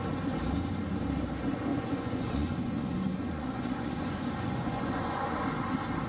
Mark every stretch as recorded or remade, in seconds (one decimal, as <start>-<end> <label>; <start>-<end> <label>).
0.0-1.7 recorded; 1.7-5.4 remade; 5.4-6.1 recorded